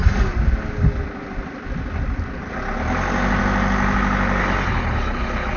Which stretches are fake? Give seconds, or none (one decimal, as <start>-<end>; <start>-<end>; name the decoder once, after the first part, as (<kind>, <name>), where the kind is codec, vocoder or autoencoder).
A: 4.4-5.6 (codec, HILCodec)